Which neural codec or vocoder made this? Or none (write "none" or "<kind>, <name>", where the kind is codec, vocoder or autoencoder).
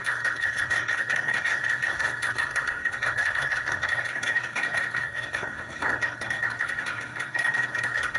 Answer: codec, SNAC